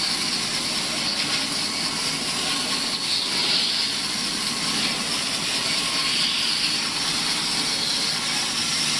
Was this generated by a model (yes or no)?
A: no